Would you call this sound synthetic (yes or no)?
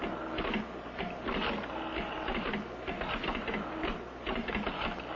no